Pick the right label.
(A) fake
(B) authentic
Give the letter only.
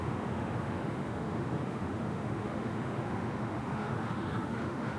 A